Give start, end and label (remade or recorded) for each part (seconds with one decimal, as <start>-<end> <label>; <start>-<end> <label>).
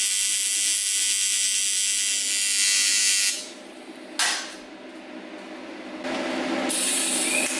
0.0-7.6 recorded